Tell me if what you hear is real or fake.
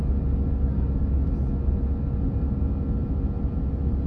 real